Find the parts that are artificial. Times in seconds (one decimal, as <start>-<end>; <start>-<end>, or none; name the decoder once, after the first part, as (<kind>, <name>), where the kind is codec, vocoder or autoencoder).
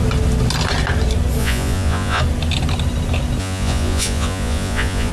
1.4-2.2 (vocoder, Vocos); 3.4-5.1